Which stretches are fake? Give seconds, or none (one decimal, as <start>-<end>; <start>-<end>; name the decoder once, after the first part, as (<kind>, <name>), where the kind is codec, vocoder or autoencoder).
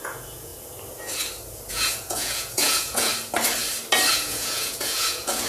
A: 0.0-0.5 (vocoder, Vocos); 1.7-3.1; 4.1-5.5